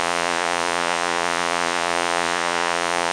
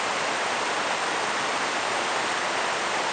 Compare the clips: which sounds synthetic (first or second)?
first